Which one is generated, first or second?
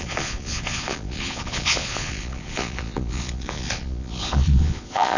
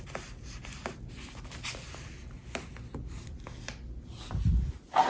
first